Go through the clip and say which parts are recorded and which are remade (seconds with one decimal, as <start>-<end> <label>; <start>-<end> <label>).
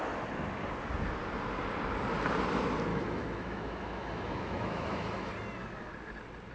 0.0-2.9 recorded; 2.9-5.3 remade; 5.3-6.5 recorded